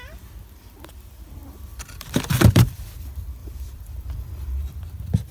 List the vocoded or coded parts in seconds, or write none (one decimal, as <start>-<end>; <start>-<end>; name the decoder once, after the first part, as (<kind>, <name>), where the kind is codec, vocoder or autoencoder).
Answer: 1.4-2.8 (vocoder, BigVGAN v2); 3.4-4.8